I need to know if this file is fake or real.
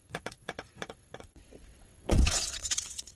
fake